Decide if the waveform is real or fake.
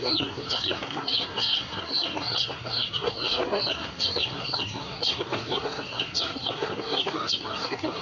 fake